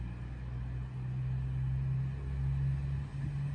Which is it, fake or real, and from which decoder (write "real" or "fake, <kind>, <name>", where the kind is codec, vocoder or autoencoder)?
real